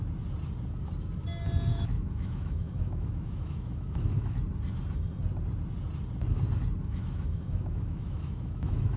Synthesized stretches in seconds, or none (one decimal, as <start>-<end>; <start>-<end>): 1.7-4.4; 6.8-9.0